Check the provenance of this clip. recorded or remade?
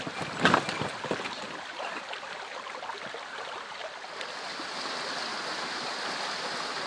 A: recorded